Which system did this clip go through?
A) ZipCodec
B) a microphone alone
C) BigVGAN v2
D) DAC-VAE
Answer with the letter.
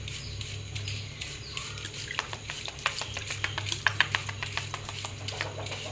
B